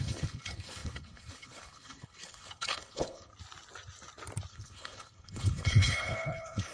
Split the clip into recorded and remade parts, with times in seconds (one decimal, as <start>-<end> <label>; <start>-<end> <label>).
0.0-3.3 remade; 3.3-4.5 recorded; 4.5-6.7 remade